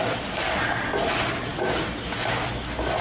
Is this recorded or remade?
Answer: recorded